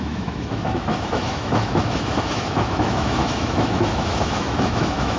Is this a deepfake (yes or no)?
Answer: yes